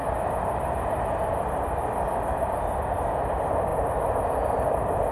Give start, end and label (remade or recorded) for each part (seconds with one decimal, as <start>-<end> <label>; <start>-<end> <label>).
0.0-5.1 recorded